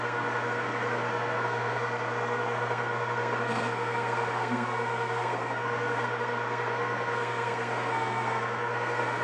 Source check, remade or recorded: remade